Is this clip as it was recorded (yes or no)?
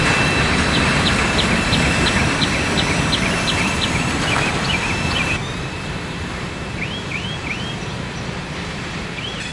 no